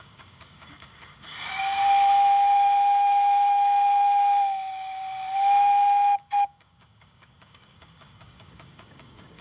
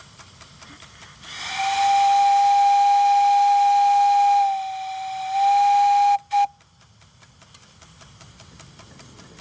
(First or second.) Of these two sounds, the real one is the second